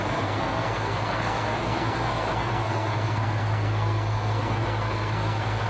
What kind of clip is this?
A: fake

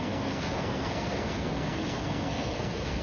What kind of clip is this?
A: fake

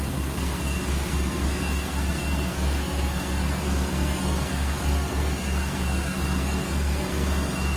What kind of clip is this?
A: fake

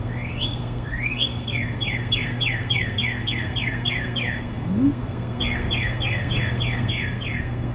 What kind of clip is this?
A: fake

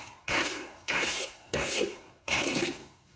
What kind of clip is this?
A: fake